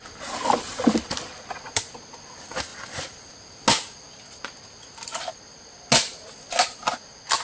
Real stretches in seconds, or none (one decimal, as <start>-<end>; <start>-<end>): 0.0-7.4